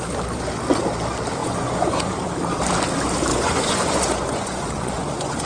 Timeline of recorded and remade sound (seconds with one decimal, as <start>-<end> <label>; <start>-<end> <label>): 0.0-1.4 recorded; 1.4-2.1 remade; 2.1-3.3 recorded; 3.3-5.5 remade